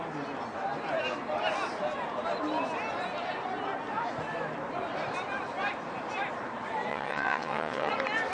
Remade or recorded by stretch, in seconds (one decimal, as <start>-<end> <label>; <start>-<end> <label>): 0.0-6.9 recorded; 6.9-7.9 remade; 7.9-8.3 recorded